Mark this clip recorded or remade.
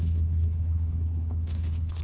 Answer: remade